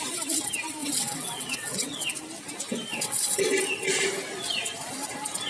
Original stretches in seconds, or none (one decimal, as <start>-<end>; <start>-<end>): 0.0-0.8; 2.1-2.9; 3.5-5.5